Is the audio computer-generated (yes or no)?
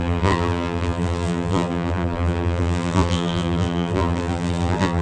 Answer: yes